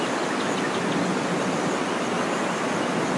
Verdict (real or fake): real